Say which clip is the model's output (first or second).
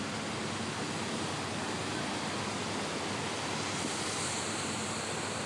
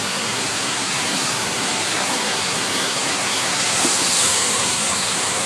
second